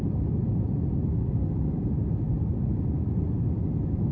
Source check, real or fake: real